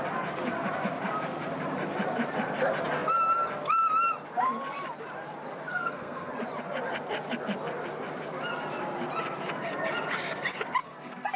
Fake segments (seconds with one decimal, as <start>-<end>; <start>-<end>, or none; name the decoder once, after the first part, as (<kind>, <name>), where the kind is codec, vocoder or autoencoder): 5.7-6.3 (codec, SNAC); 10.8-11.4